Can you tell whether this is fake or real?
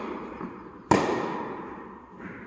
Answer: real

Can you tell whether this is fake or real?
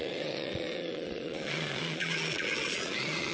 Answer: fake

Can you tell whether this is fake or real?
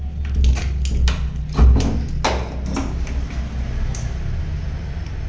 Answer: real